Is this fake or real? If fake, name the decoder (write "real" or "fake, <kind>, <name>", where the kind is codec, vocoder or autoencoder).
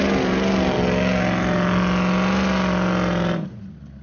real